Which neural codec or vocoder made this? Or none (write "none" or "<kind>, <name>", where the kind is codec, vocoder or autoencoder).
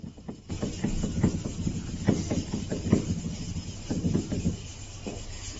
none